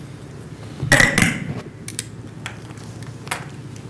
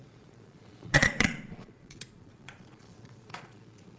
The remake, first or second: second